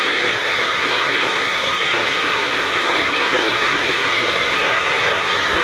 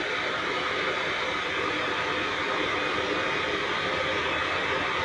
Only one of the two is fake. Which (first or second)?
first